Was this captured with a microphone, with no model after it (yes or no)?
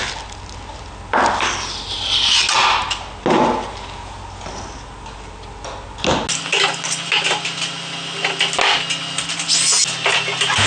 yes